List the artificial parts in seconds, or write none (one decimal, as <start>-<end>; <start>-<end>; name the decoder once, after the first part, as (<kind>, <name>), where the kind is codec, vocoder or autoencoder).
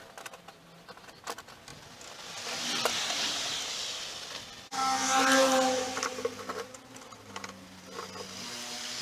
none